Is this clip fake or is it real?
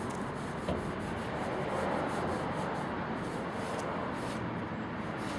real